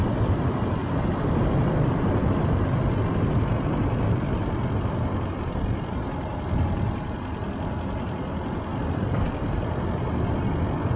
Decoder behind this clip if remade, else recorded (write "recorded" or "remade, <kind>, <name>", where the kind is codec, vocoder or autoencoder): recorded